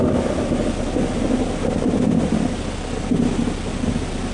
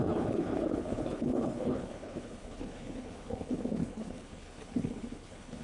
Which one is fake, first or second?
second